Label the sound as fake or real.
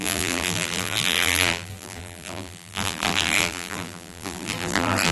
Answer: fake